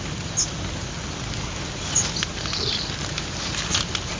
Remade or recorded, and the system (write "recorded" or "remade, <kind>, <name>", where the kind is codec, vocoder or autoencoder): recorded